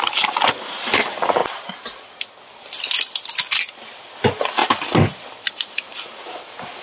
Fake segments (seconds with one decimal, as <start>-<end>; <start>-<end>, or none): 4.6-5.5